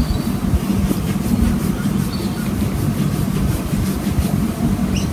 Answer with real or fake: real